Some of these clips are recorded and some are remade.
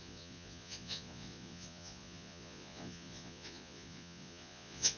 remade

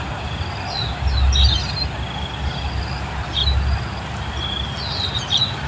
recorded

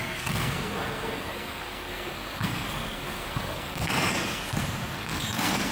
remade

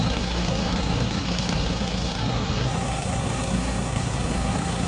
remade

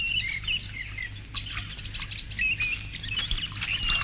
recorded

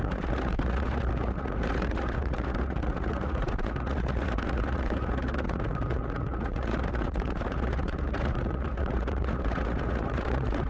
remade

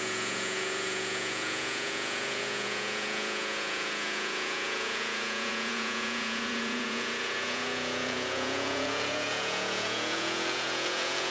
remade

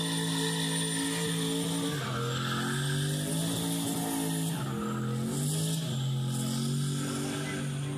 recorded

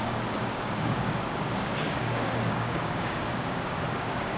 remade